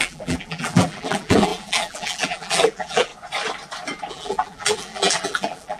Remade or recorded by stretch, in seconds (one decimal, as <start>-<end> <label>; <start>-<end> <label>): 0.0-3.1 remade; 3.1-4.1 recorded; 4.1-5.8 remade